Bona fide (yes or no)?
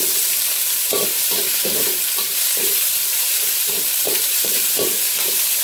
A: no